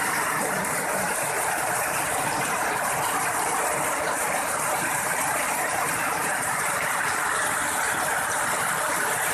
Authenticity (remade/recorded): remade